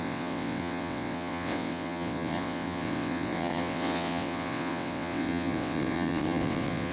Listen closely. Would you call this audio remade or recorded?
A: remade